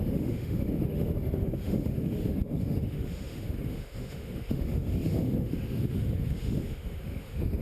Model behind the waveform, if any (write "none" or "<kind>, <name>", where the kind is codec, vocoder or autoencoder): autoencoder, DAC-VAE